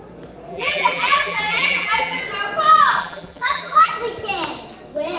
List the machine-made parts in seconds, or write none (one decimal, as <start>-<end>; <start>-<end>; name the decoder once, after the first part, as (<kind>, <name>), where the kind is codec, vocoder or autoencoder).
0.5-2.2 (vocoder, BigVGAN v2); 3.0-3.9